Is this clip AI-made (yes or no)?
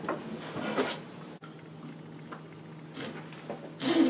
no